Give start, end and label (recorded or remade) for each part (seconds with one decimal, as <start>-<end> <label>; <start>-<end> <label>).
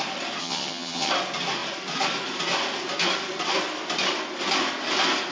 0.0-0.4 recorded; 0.4-1.1 remade; 1.1-5.3 recorded